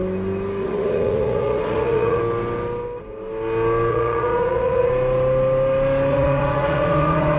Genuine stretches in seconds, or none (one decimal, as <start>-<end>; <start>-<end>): 0.0-0.6; 2.2-3.9; 4.9-6.1